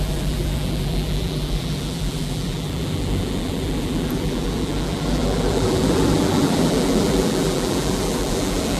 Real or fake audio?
fake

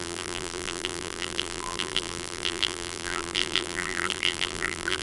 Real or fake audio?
fake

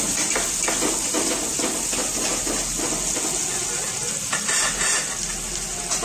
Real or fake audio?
real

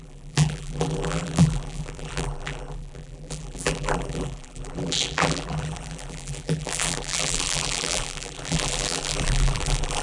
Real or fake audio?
fake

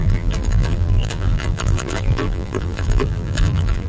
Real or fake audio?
fake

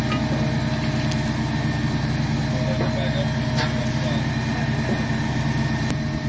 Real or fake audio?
real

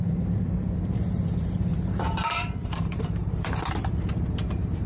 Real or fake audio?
fake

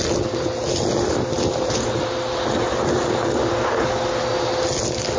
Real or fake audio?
real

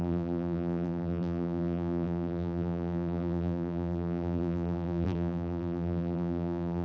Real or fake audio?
fake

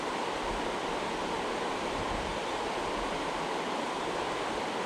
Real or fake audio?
fake